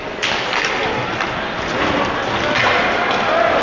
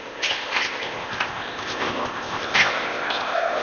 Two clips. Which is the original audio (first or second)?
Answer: first